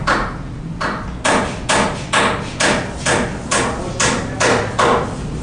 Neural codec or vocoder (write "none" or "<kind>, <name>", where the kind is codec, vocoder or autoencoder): none